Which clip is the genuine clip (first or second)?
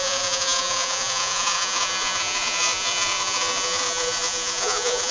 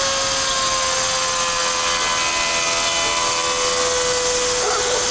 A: second